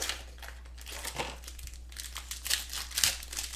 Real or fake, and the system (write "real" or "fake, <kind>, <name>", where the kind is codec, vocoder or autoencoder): real